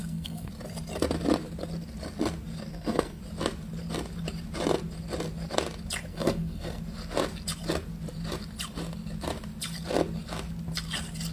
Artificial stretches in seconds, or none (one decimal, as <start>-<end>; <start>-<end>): 0.0-0.5; 2.7-3.2; 6.1-6.8